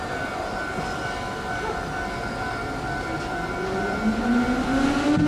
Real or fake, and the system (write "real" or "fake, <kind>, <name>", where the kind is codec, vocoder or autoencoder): real